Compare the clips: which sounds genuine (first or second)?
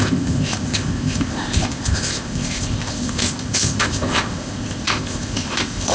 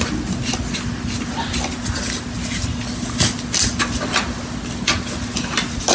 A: second